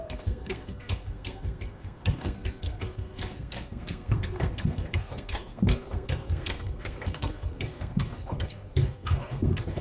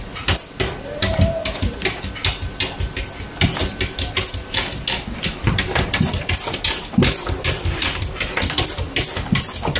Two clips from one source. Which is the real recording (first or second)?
second